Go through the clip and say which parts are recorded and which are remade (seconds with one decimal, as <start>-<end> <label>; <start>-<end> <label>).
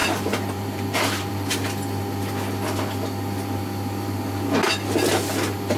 0.0-1.3 remade; 1.3-5.8 recorded